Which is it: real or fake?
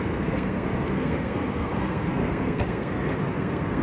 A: fake